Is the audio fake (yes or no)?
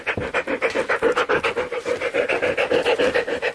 no